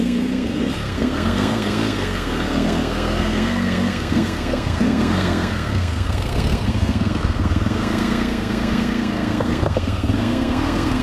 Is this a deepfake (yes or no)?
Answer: yes